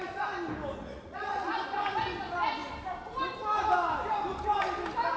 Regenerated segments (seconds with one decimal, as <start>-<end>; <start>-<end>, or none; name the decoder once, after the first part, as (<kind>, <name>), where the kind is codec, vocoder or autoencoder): 0.8-1.5 (vocoder, Vocos)